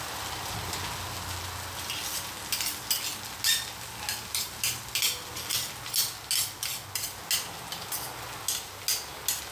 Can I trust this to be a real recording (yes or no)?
yes